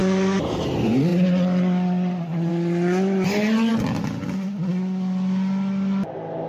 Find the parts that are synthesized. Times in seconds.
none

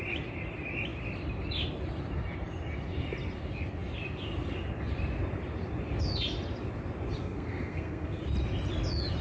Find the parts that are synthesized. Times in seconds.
7.2-8.2 (codec, SNAC)

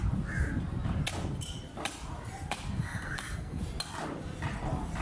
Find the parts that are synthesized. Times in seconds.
2.8-3.6 (codec, SNAC)